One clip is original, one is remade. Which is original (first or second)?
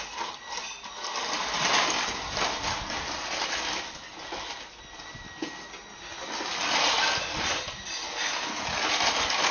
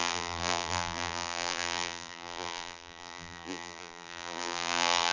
first